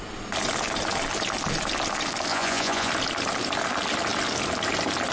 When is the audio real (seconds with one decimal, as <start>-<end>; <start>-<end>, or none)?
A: 0.0-2.3; 2.9-5.1